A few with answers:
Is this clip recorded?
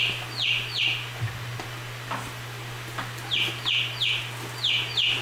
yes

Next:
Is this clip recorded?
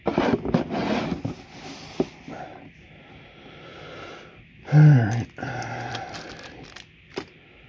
yes